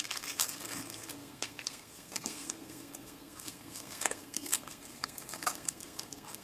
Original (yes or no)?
no